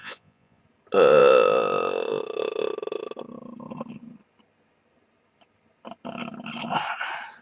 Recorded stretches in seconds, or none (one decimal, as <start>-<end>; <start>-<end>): 0.6-7.4